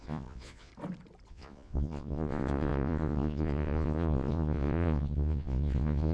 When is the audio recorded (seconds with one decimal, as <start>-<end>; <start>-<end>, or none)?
0.7-1.3